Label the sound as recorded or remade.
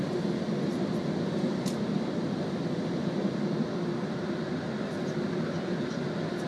recorded